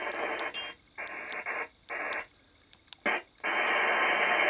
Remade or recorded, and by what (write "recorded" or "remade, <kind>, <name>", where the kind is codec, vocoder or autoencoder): recorded